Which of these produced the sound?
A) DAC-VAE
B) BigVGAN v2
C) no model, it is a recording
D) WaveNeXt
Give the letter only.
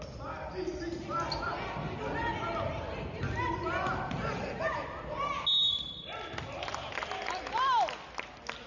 C